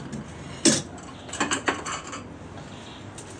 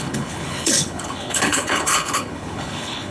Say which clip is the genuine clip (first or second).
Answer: first